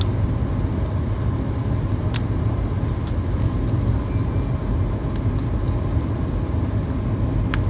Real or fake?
real